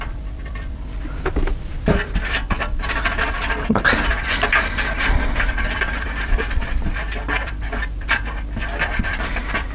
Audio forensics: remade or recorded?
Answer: remade